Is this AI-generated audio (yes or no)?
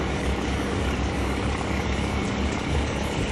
yes